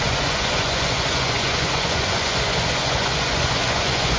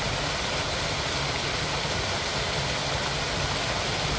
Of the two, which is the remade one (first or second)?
first